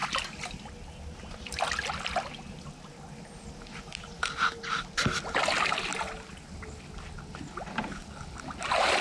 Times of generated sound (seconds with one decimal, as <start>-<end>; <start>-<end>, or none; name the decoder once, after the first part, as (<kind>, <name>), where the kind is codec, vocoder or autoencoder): none

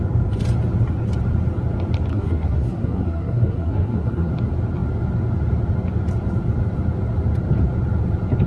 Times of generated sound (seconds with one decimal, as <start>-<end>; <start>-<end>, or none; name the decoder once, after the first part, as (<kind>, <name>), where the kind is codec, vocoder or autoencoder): 2.1-4.3 (codec, SNAC)

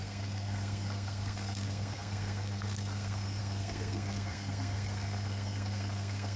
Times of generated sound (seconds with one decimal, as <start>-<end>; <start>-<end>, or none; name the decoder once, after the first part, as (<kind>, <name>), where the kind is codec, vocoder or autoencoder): 0.0-6.4 (codec, SNAC)

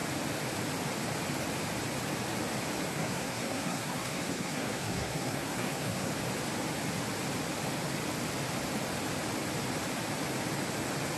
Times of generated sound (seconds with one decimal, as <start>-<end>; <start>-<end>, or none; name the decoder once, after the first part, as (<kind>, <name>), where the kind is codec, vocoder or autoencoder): 2.9-6.1 (codec, SNAC)

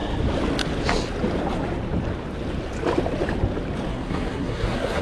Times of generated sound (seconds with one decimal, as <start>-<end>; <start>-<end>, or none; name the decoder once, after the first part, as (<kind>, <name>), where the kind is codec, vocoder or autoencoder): 3.9-5.0 (codec, SNAC)